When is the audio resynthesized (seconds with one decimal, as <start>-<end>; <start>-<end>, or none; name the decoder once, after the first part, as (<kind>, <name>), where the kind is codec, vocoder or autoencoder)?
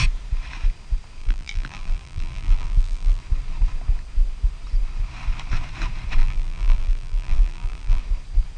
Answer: 1.2-3.2 (vocoder, BigVGAN v2); 6.2-8.0